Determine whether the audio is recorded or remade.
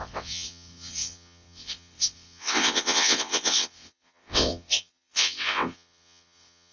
remade